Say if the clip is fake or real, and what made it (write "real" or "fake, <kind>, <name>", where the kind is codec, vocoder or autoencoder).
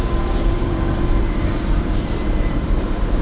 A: fake, vocoder, BigVGAN v2